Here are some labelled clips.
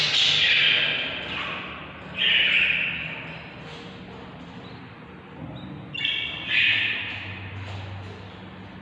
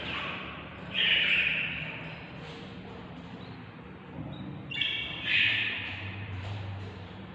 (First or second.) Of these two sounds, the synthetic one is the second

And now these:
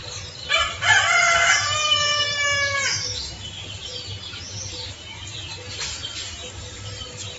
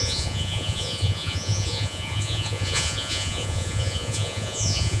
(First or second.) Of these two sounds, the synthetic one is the second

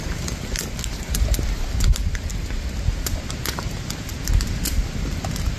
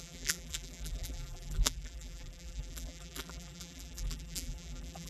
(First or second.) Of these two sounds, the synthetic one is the second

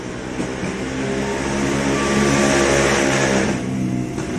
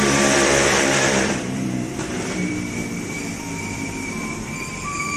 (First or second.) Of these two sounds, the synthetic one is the second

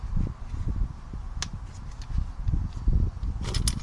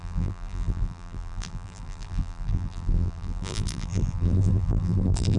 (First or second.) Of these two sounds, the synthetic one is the second